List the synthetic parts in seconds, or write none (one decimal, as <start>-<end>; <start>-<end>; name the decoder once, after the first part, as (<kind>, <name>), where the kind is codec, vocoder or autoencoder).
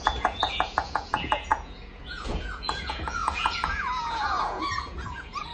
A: 0.0-5.5 (vocoder, Vocos)